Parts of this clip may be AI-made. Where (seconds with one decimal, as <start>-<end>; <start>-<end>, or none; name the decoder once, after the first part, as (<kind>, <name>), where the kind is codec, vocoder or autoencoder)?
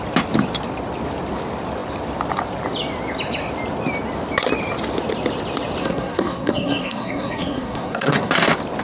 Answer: 5.8-8.3 (codec, SNAC)